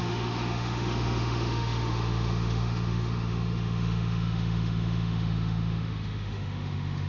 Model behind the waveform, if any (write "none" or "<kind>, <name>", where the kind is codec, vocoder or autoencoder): autoencoder, DAC-VAE